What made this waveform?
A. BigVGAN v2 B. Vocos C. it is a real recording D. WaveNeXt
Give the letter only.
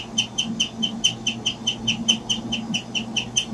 C